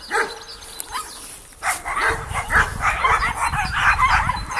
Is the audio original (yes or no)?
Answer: yes